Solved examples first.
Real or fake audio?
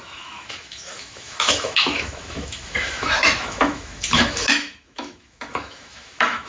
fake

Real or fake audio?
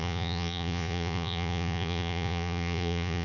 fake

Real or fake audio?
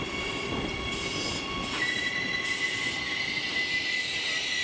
real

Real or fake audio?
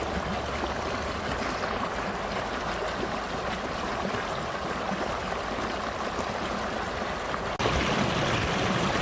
real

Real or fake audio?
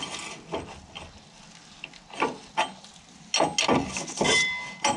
real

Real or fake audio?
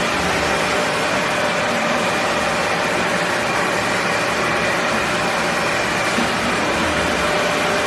real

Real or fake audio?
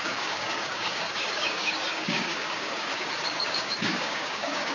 fake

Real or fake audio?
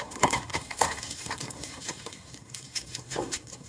fake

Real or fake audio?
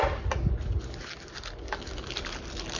real